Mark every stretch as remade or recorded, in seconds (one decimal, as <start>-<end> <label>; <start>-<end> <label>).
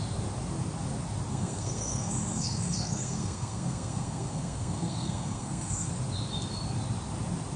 0.0-1.3 recorded; 1.3-5.9 remade; 5.9-7.6 recorded